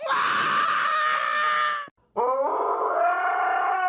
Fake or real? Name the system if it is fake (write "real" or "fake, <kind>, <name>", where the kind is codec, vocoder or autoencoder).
real